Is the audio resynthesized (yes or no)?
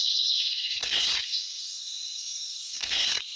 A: yes